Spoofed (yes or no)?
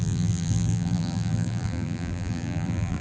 yes